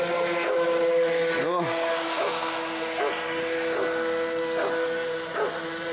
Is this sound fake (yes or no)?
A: no